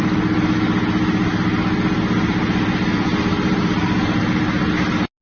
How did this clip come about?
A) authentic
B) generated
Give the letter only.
A